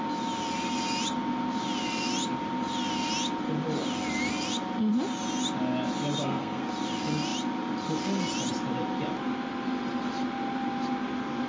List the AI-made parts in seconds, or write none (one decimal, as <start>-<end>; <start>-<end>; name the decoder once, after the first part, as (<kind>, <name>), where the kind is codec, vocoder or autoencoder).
6.2-6.7 (codec, SNAC)